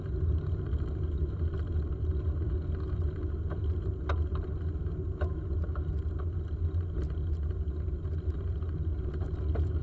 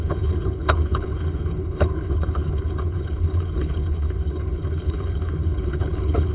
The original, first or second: first